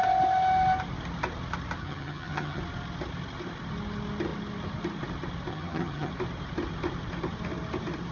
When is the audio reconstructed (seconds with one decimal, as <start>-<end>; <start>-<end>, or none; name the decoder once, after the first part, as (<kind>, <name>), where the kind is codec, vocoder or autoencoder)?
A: 1.8-2.6 (vocoder, HiFi-GAN); 5.5-6.1